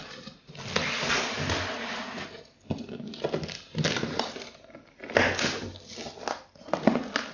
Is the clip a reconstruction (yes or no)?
no